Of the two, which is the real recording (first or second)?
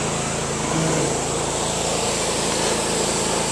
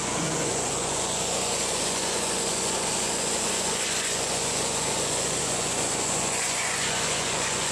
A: first